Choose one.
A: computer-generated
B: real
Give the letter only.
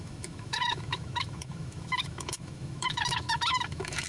A